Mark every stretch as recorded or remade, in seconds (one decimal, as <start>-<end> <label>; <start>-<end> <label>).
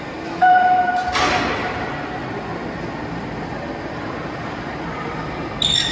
0.0-5.9 recorded